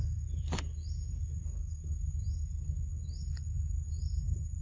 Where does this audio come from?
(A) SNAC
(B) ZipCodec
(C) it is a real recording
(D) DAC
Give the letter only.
C